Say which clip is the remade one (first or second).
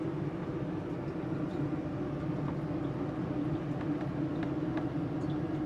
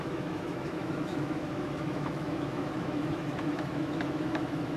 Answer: second